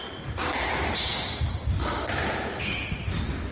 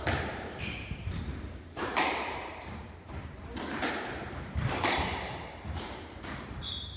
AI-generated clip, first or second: second